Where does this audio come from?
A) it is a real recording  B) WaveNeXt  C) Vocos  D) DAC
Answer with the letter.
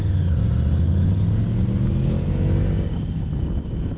A